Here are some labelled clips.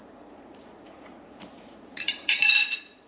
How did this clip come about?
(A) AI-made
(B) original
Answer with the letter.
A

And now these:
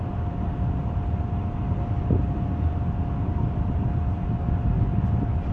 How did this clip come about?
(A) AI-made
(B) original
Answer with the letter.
B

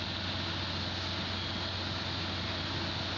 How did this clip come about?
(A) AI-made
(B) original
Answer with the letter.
B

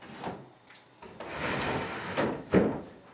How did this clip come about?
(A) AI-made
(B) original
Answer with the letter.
B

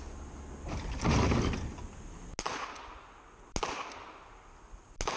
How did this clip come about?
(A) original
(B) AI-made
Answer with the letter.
A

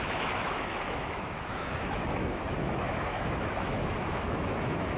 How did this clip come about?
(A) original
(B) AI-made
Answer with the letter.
B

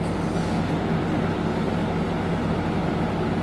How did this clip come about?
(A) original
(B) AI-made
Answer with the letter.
A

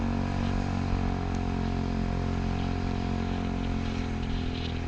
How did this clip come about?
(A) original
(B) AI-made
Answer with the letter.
A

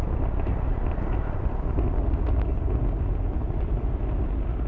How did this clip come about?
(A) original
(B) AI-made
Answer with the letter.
A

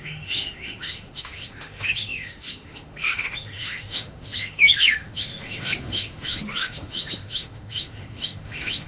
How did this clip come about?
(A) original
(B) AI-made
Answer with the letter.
B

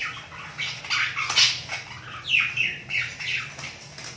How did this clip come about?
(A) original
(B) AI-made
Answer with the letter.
A